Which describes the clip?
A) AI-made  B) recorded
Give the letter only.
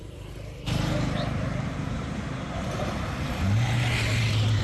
A